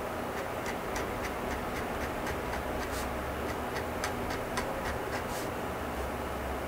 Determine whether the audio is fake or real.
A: real